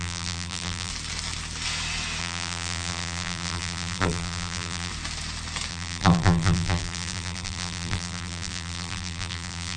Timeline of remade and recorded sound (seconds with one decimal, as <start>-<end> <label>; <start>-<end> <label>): 0.0-0.9 remade; 0.9-2.2 recorded; 2.2-4.9 remade; 4.9-5.7 recorded; 5.7-9.8 remade